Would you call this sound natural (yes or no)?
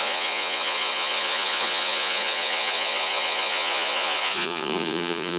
no